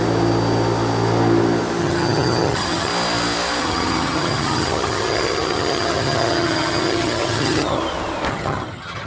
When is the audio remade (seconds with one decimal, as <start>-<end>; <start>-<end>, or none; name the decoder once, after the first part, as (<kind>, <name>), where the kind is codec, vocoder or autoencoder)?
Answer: 1.8-2.9 (vocoder, HiFi-GAN); 3.6-7.8; 8.3-9.1